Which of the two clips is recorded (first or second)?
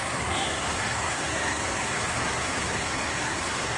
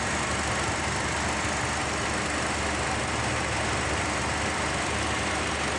second